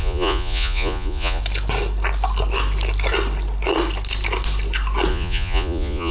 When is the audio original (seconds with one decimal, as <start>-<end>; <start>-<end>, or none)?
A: 1.4-5.1